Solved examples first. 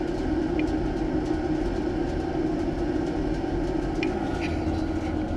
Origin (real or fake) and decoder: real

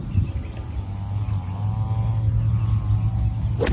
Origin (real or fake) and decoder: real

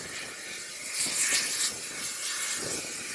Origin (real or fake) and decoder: real